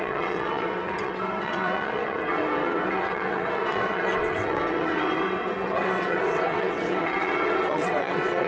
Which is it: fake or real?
fake